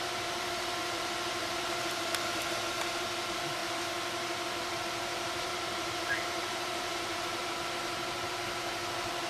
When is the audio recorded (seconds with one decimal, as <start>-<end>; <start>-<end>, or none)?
3.6-4.8